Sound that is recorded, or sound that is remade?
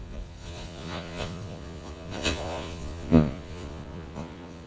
remade